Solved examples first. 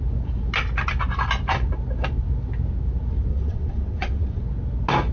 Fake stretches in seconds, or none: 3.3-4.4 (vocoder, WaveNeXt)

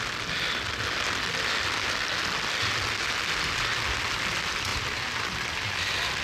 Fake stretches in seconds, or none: 4.7-5.8 (vocoder, BigVGAN v2)

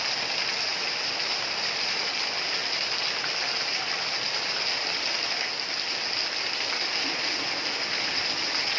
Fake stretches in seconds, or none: none

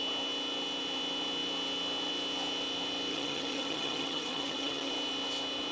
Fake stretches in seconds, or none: 3.1-4.9 (vocoder, HiFi-GAN)

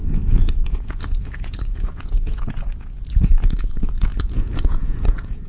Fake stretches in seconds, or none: 0.0-5.5 (vocoder, Vocos)